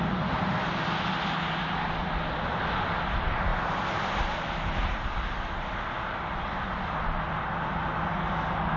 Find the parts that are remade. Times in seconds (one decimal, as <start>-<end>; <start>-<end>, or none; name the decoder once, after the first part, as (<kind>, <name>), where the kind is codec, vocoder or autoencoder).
none